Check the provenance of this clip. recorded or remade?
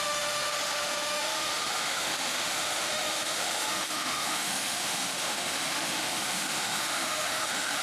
remade